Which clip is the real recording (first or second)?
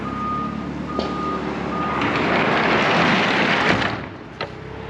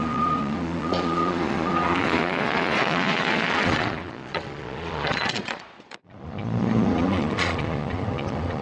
first